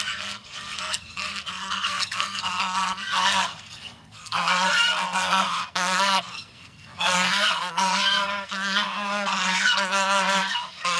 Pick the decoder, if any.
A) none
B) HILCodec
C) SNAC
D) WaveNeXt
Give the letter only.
C